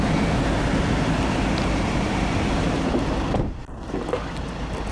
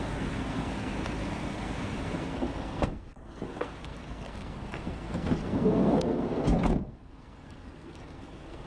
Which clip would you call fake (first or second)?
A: second